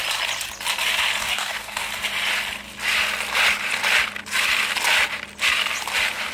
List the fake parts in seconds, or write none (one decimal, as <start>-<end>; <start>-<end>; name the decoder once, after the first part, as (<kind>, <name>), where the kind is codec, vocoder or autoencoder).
1.2-1.9 (codec, DAC)